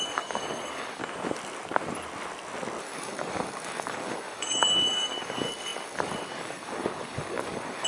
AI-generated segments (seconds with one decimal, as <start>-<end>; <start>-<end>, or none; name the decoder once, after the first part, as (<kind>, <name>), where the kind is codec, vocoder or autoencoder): 0.0-1.0 (codec, DAC); 2.8-7.9

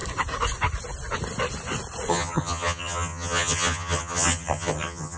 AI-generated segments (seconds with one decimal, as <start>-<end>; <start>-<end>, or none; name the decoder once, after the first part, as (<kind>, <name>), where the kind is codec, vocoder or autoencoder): 2.1-5.2 (vocoder, HiFi-GAN)

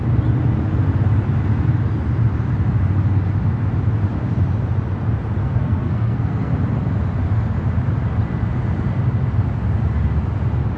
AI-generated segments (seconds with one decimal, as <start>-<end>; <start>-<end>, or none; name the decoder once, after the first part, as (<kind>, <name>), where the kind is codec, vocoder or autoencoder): 5.4-6.5 (codec, SNAC)